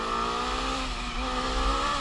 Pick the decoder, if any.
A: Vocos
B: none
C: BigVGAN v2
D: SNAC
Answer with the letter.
B